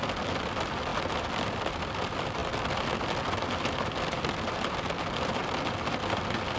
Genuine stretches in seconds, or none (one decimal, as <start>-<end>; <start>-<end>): 0.0-6.6